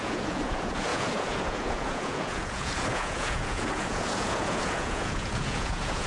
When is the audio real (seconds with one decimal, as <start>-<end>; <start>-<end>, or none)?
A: none